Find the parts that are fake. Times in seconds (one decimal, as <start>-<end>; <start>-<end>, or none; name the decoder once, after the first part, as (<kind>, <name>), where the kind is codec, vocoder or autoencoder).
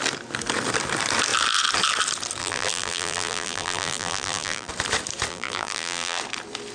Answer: 2.4-4.7 (vocoder, BigVGAN v2); 5.3-6.2